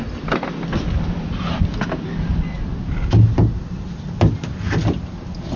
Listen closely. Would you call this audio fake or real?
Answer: real